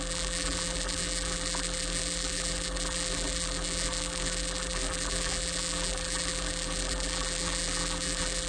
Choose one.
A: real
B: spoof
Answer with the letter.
B